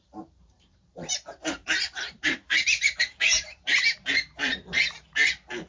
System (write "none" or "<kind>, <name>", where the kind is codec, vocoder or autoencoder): vocoder, BigVGAN v2